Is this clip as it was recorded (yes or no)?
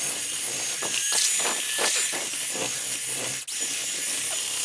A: yes